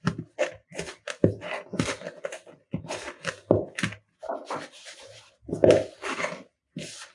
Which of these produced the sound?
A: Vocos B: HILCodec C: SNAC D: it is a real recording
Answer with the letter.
D